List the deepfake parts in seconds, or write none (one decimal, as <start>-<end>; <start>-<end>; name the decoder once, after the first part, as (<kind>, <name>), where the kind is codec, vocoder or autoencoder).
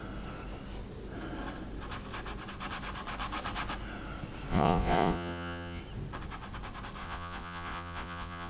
4.5-5.8 (vocoder, Vocos); 7.0-8.5